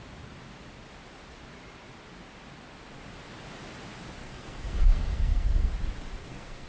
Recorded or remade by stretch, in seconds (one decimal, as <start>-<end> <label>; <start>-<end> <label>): 0.0-4.2 recorded; 4.2-5.7 remade; 5.7-6.2 recorded; 6.2-6.7 remade